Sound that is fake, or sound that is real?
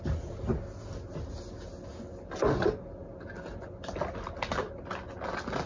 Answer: real